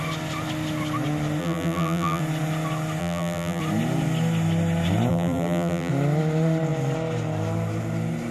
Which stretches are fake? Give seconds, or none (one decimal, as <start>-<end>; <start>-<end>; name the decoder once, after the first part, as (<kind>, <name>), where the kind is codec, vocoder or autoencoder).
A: 1.4-2.2 (vocoder, BigVGAN v2); 3.0-3.6; 5.1-5.9